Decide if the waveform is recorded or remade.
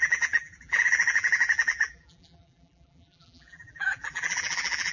remade